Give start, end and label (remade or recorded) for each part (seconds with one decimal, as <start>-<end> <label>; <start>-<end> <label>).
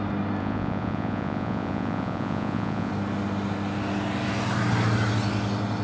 0.0-0.4 recorded; 0.4-2.9 remade; 2.9-5.8 recorded